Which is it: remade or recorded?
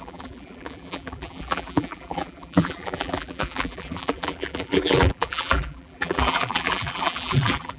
remade